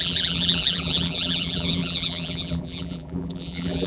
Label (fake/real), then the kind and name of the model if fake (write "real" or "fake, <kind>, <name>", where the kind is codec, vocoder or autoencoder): fake, vocoder, BigVGAN v2